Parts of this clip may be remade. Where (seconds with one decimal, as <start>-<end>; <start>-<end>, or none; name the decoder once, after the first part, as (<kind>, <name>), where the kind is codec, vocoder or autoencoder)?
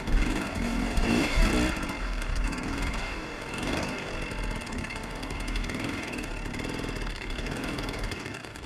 0.0-1.5 (codec, DAC); 2.0-4.1; 4.6-6.3; 7.1-8.7